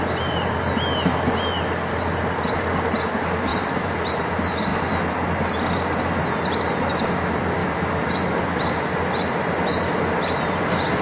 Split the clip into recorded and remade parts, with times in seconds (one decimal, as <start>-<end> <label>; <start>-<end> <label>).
0.0-3.5 recorded; 3.5-4.1 remade; 4.1-11.0 recorded